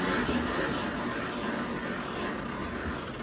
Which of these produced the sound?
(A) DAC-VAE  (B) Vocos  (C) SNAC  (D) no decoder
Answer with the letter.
D